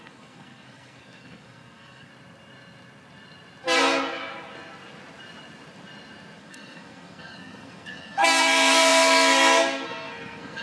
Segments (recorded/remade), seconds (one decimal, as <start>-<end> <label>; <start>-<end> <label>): 0.0-2.1 remade; 2.1-6.4 recorded; 6.4-10.6 remade